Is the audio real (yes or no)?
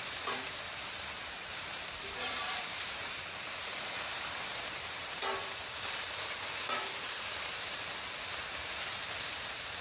no